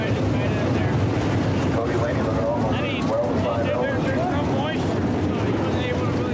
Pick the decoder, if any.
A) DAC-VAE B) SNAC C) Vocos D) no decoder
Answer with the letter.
D